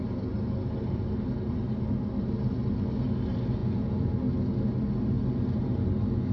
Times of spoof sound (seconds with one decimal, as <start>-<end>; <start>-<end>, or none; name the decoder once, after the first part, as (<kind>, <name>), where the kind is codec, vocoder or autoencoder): 3.6-4.1 (vocoder, Vocos)